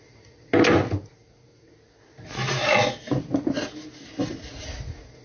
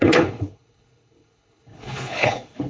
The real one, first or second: first